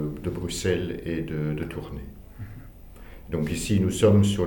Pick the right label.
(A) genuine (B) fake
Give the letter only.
A